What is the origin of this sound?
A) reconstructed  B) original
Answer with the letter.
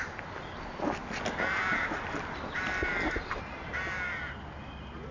B